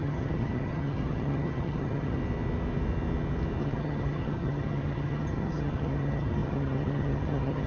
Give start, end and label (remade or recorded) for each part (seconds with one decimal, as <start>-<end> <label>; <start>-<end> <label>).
0.0-2.2 remade; 2.2-3.6 recorded; 3.6-7.7 remade